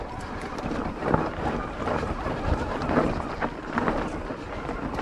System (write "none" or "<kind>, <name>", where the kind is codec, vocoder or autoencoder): none